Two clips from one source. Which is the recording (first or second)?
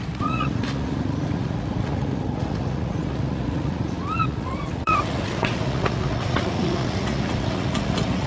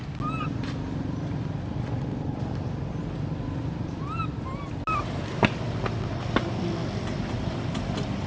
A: second